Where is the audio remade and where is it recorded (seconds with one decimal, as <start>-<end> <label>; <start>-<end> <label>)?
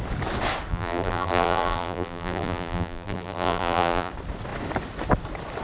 0.0-0.7 recorded; 0.7-4.1 remade; 4.1-5.6 recorded